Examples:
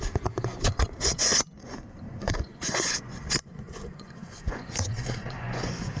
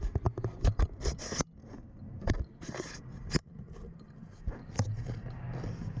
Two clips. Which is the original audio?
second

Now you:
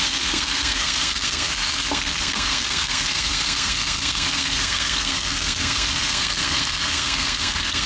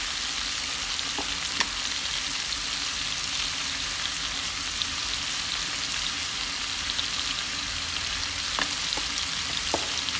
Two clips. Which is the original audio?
second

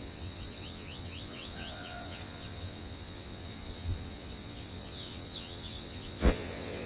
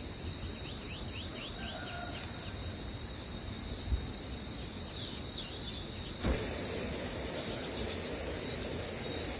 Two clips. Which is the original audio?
second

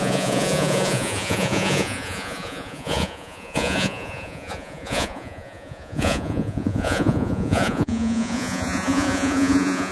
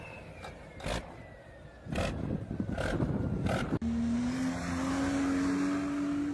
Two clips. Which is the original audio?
second